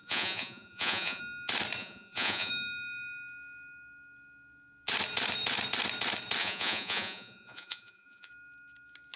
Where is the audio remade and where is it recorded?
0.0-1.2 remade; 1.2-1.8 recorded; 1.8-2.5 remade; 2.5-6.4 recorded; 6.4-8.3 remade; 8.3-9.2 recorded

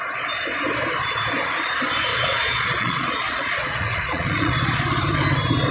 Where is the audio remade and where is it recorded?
0.0-2.1 recorded; 2.1-4.5 remade; 4.5-5.7 recorded

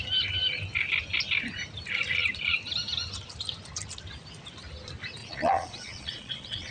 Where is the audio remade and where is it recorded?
0.0-5.2 recorded; 5.2-6.7 remade

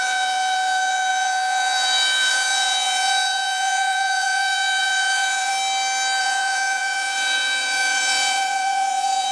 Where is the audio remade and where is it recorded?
0.0-5.5 remade; 5.5-6.2 recorded; 6.2-9.3 remade